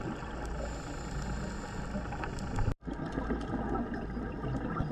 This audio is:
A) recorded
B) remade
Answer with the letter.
A